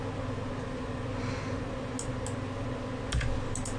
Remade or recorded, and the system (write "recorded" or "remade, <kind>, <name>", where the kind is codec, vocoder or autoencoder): recorded